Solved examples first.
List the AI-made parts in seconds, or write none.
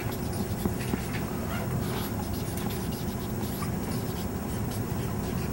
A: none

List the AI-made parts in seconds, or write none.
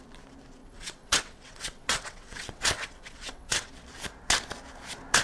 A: 0.6-3.7 (vocoder, WaveNeXt)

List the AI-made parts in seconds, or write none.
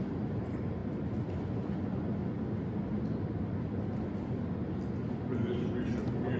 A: none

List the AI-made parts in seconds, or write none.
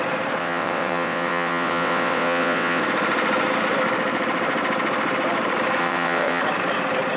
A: 0.4-2.8 (vocoder, WaveNeXt); 5.8-6.4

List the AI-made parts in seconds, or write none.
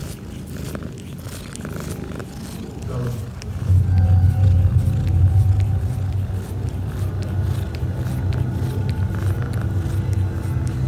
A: none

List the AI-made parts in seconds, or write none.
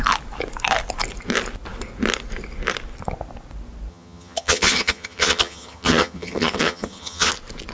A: 3.9-7.3 (vocoder, HiFi-GAN)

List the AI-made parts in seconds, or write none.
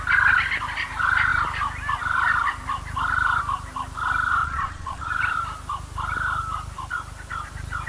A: 4.4-5.1 (vocoder, Vocos)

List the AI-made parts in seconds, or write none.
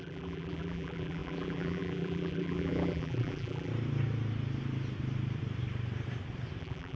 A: 0.0-3.7 (vocoder, BigVGAN v2); 6.6-7.0